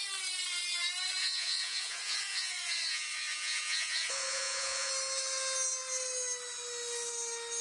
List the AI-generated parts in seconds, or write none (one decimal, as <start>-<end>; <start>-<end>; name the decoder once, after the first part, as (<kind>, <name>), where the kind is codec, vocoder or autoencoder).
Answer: 1.2-4.9 (vocoder, Vocos)